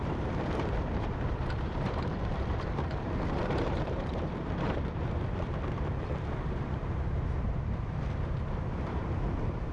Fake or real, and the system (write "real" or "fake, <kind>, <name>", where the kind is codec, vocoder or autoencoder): fake, vocoder, BigVGAN v2